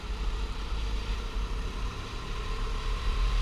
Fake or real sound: fake